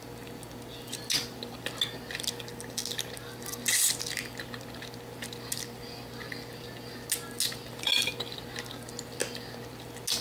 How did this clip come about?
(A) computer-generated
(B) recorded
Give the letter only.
B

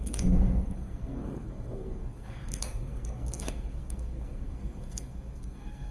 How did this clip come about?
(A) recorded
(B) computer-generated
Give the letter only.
B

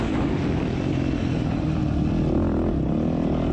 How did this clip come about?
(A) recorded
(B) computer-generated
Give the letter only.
A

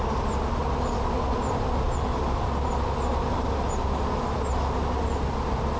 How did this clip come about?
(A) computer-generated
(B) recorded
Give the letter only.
B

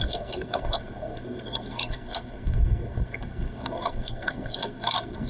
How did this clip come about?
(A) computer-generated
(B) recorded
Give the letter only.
A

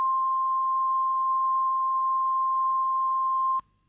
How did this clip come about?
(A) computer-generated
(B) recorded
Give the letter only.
A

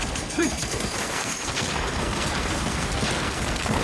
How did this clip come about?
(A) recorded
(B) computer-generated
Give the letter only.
B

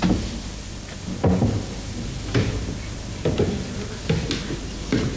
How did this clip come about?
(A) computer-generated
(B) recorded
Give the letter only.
B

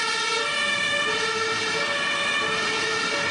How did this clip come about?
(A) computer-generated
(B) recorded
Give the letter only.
B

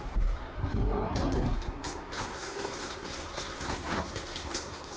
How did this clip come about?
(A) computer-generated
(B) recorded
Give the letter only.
A